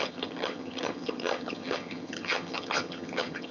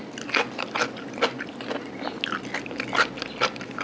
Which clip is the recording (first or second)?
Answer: second